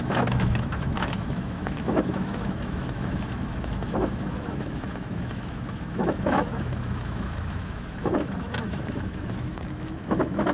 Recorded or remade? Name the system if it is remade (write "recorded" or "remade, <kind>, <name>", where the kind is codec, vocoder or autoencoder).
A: remade, autoencoder, DAC-VAE